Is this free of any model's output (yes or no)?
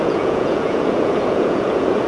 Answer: no